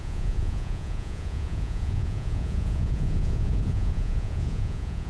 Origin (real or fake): fake